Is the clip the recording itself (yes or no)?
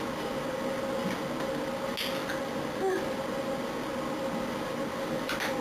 yes